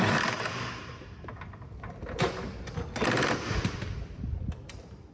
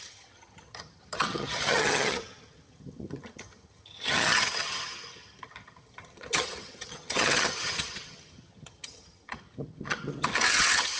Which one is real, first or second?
first